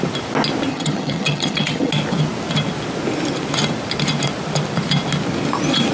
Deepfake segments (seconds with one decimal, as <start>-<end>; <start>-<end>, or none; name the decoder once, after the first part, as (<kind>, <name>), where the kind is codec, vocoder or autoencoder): 0.7-1.9 (vocoder, HiFi-GAN)